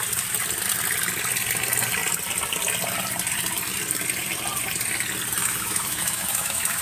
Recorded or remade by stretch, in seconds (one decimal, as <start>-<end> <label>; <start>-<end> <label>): 0.0-5.4 recorded; 5.4-6.8 remade